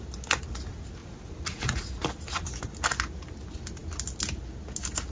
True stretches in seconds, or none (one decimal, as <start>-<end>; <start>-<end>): 0.0-1.0; 1.9-5.1